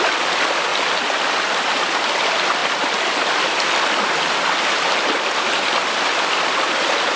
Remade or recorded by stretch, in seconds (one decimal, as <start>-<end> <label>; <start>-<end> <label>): 0.0-7.2 recorded